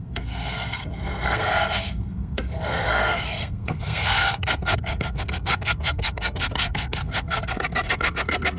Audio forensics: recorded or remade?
remade